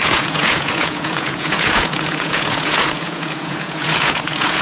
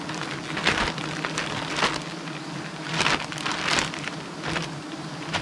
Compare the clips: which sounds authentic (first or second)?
second